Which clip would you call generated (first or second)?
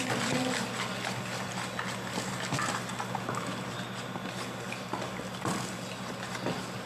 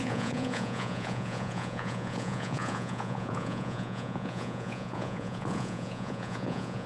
second